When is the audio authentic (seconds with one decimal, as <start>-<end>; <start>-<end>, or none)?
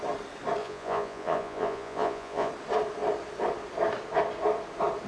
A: 0.0-0.6; 2.5-5.1